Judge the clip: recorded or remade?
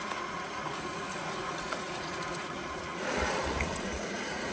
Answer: remade